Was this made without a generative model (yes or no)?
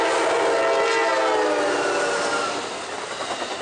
yes